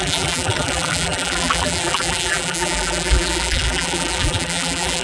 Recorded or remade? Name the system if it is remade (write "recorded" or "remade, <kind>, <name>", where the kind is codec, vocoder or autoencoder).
remade, vocoder, BigVGAN v2